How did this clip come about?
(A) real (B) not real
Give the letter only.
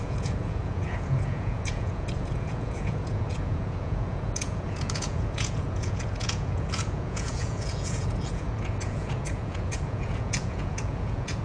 B